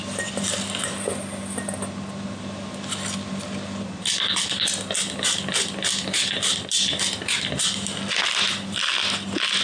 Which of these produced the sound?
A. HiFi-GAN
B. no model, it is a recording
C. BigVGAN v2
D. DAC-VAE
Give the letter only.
B